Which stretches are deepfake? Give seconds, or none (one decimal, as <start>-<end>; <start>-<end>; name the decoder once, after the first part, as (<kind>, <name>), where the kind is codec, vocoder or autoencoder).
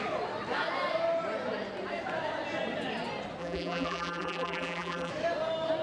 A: 3.4-5.1 (vocoder, BigVGAN v2)